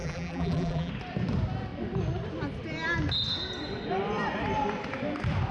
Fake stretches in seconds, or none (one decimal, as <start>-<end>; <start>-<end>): 0.0-0.9